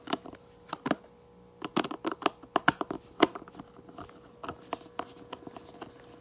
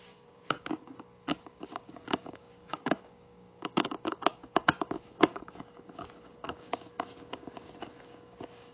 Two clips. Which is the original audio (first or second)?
first